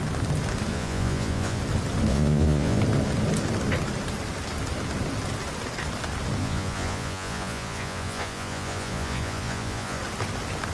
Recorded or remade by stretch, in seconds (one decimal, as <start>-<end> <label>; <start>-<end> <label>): 0.0-0.7 recorded; 0.7-1.6 remade; 1.6-2.1 recorded; 2.1-2.8 remade; 2.8-6.4 recorded; 6.4-10.0 remade; 10.0-10.7 recorded